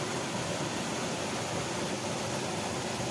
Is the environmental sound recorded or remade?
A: recorded